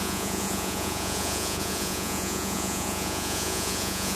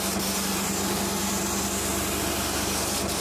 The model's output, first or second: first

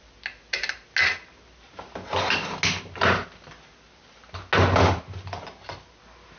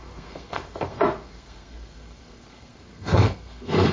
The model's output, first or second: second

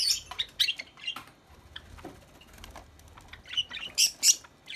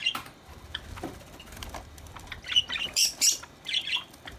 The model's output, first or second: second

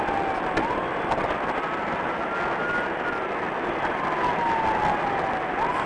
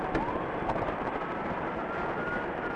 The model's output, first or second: second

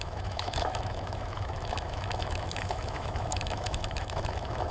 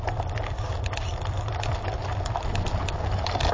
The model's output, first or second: first